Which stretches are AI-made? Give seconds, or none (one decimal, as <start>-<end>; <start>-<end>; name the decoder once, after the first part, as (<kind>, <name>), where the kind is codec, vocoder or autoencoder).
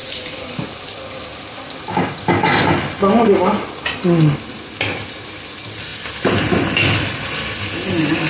none